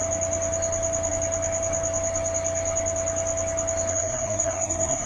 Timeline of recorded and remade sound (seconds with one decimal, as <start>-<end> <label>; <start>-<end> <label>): 0.0-3.9 recorded; 3.9-5.1 remade